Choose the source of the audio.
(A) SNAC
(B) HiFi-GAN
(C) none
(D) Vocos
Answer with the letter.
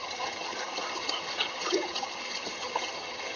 B